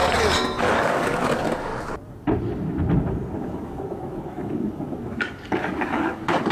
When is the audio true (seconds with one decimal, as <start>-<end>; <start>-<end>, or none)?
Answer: 0.0-0.6; 1.7-3.4